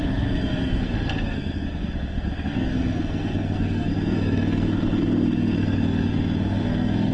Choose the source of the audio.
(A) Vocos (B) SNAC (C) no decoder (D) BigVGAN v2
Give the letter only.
B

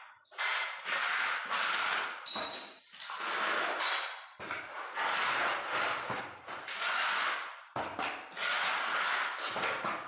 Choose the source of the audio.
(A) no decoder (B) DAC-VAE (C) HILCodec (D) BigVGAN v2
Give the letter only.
A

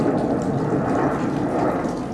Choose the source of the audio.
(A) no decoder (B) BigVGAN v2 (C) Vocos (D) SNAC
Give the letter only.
A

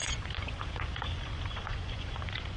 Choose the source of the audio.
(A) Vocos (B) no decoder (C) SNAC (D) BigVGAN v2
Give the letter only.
A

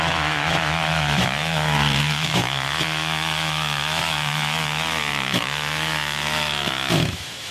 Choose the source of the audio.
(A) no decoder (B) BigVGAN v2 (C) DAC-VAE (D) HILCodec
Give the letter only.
C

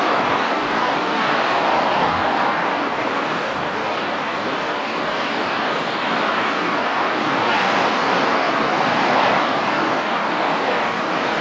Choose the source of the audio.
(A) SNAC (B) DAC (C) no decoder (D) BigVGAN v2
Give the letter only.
B